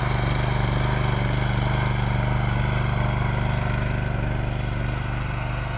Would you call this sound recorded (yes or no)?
yes